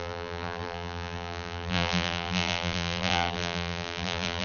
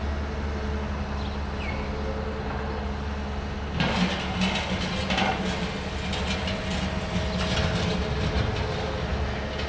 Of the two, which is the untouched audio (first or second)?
second